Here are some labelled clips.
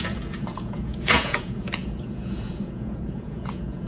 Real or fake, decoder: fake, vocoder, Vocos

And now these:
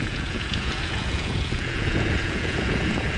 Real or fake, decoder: fake, vocoder, Vocos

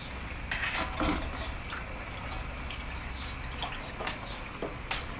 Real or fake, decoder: real